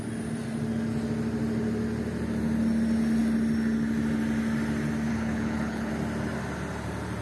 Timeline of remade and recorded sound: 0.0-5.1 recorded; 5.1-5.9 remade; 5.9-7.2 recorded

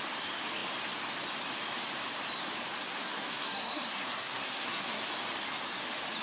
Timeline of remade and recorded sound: 0.0-2.8 recorded; 2.8-5.1 remade; 5.1-6.2 recorded

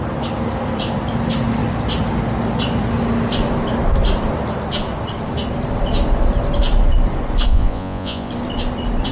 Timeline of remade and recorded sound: 0.0-7.5 recorded; 7.5-8.3 remade; 8.3-9.1 recorded

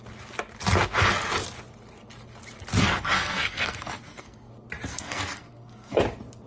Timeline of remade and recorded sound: 0.0-2.8 recorded; 2.8-4.5 remade; 4.5-4.9 recorded; 4.9-6.0 remade; 6.0-6.5 recorded

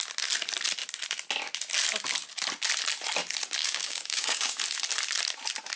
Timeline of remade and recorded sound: 0.0-3.6 recorded; 3.6-4.6 remade; 4.6-5.8 recorded

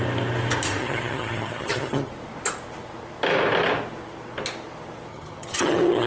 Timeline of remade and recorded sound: 0.0-0.8 recorded; 0.8-2.1 remade; 2.1-5.1 recorded; 5.1-6.1 remade